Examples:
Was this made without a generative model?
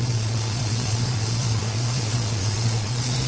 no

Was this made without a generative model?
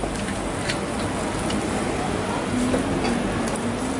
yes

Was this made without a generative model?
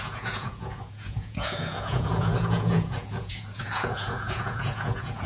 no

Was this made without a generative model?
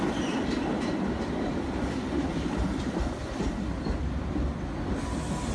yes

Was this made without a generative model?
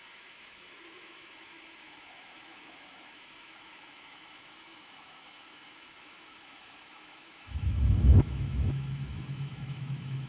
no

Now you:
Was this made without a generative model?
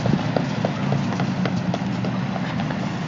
yes